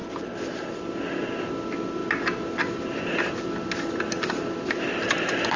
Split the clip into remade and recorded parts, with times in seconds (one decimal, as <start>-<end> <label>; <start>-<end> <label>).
0.0-5.6 recorded